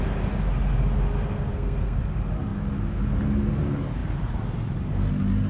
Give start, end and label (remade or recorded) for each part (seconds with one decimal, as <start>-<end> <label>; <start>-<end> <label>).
0.0-1.5 recorded; 1.5-2.0 remade; 2.0-5.5 recorded